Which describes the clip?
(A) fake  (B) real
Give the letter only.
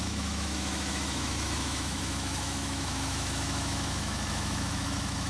A